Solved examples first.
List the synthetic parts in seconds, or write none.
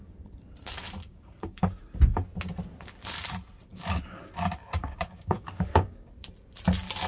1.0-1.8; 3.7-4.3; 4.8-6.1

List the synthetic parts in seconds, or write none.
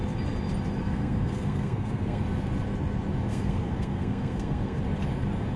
0.8-2.2; 3.3-4.8